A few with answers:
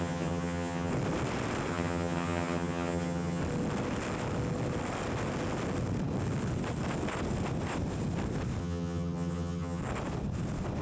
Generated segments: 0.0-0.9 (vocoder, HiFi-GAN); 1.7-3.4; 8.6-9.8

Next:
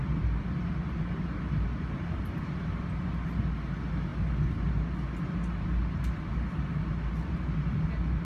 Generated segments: none

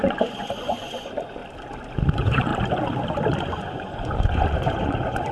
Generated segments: 0.0-1.4 (vocoder, Vocos); 2.1-2.5; 3.4-5.3

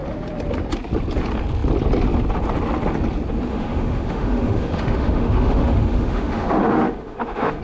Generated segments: 3.5-7.6 (autoencoder, DAC-VAE)

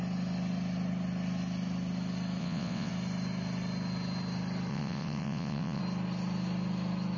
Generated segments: 2.4-2.9 (vocoder, WaveNeXt); 4.7-5.8

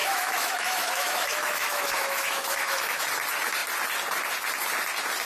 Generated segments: 0.0-3.0 (autoencoder, DAC-VAE)

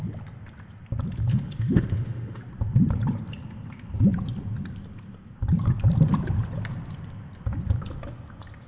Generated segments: 1.3-2.4 (autoencoder, DAC-VAE)